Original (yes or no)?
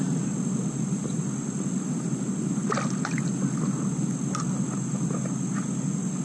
yes